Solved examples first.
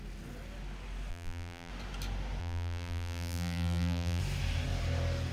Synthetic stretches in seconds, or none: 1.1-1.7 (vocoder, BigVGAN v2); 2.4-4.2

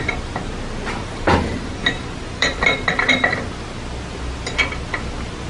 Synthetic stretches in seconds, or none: 1.0-2.9 (vocoder, BigVGAN v2)

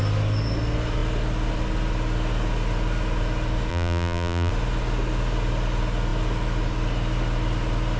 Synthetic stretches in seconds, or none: 3.7-4.5 (vocoder, BigVGAN v2)

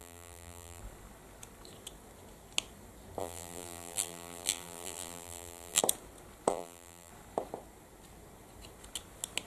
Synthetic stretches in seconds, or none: 0.0-0.8 (vocoder, BigVGAN v2); 3.2-5.8; 6.5-7.1

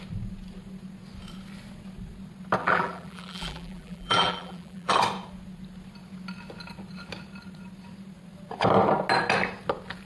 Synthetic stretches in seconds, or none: 2.6-4.9 (vocoder, BigVGAN v2)

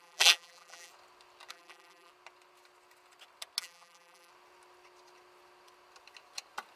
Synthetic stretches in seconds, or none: 0.0-0.9 (vocoder, BigVGAN v2); 1.5-2.1; 3.6-4.3

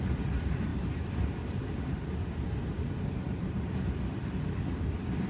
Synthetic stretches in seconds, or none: 0.7-3.9 (vocoder, BigVGAN v2)

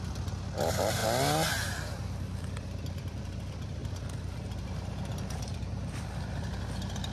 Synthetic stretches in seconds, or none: 0.0-1.0 (vocoder, BigVGAN v2); 1.5-3.8; 5.4-7.1